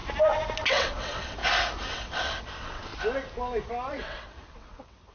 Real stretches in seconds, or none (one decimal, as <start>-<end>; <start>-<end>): 0.0-0.7; 1.4-1.9; 2.9-3.9